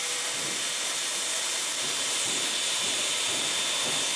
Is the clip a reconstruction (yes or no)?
no